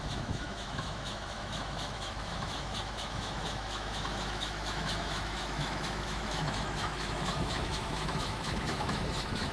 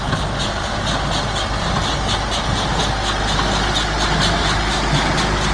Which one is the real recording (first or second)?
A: second